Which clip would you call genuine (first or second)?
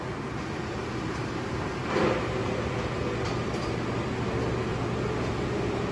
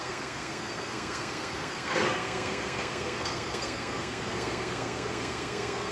first